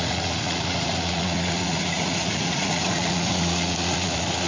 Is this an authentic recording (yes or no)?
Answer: no